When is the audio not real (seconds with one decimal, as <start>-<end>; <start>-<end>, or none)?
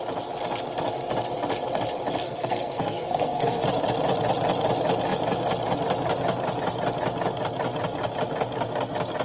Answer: 2.2-3.6